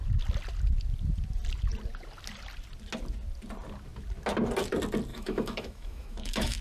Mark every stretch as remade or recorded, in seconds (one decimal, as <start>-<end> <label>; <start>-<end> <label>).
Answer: 0.0-5.1 recorded; 5.1-6.6 remade